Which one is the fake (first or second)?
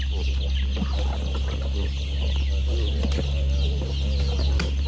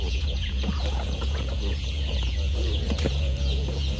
second